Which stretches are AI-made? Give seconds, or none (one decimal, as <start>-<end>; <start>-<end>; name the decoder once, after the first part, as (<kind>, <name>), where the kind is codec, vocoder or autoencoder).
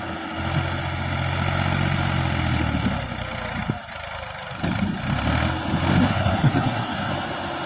6.1-7.1 (codec, SNAC)